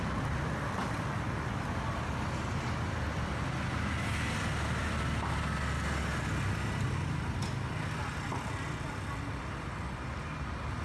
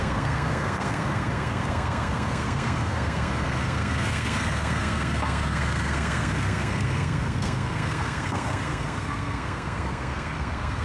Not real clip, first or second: second